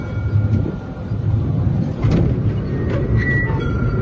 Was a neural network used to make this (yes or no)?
no